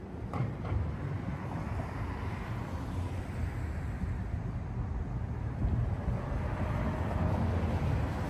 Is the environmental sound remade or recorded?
recorded